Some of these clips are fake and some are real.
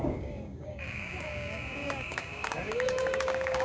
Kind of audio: fake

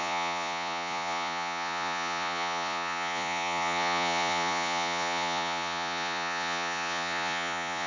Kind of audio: fake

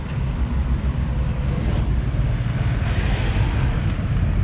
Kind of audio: real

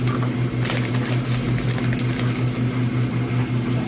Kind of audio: real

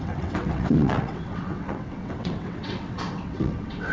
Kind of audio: fake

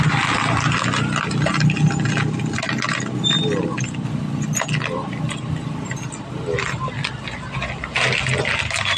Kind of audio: real